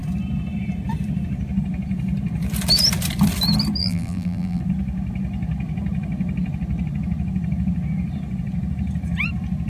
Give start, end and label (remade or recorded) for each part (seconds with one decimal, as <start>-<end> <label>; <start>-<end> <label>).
0.0-3.8 recorded; 3.8-4.6 remade; 4.6-9.7 recorded